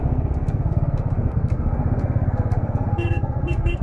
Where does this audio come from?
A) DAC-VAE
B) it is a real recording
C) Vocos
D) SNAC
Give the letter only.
D